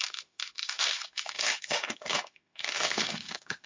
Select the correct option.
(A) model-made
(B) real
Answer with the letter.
A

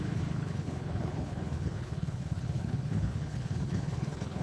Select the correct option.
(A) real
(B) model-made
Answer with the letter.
B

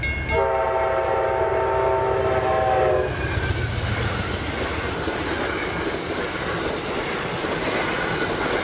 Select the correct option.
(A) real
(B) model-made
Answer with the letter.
A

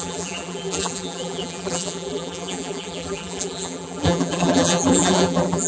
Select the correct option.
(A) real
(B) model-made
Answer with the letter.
B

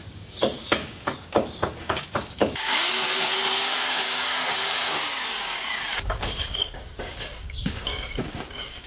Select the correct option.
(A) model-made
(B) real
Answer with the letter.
A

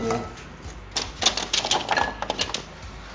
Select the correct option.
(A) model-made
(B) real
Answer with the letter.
B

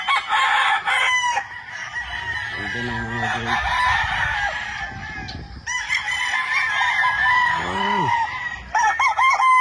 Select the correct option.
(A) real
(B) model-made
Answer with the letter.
A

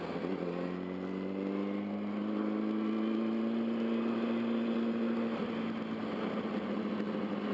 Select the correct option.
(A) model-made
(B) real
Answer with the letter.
B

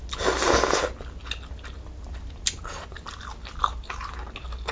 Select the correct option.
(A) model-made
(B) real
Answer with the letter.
B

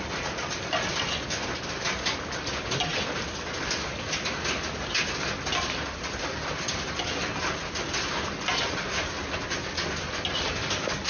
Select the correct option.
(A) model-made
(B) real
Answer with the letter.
B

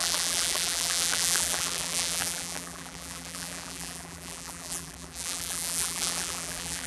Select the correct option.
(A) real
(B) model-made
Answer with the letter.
B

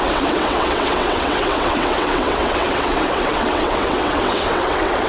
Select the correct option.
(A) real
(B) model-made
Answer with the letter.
B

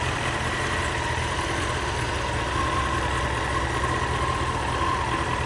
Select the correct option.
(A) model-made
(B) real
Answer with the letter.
B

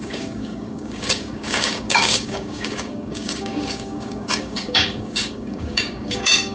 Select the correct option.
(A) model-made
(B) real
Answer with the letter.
A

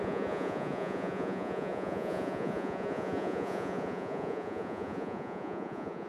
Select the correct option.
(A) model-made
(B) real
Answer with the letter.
A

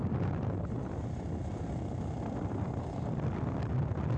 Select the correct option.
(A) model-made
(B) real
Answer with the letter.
B